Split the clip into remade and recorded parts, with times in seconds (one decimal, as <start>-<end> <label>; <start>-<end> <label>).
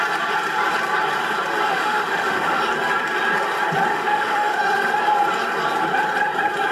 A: 0.0-1.7 recorded; 1.7-2.6 remade; 2.6-3.9 recorded; 3.9-4.6 remade; 4.6-6.7 recorded